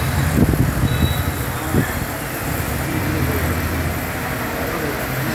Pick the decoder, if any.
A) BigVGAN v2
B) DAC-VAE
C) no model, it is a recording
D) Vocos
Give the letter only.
C